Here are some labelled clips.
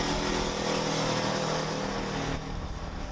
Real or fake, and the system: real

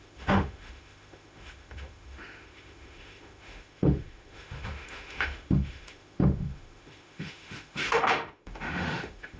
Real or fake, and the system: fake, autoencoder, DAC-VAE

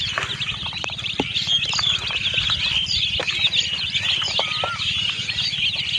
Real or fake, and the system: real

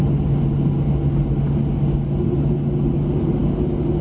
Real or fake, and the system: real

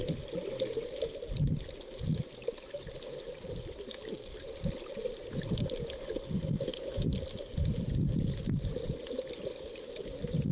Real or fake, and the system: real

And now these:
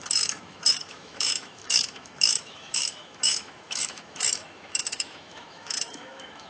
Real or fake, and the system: fake, autoencoder, DAC-VAE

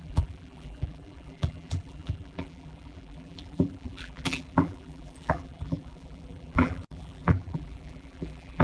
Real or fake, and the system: fake, vocoder, BigVGAN v2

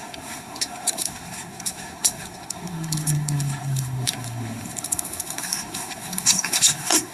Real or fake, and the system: fake, codec, SNAC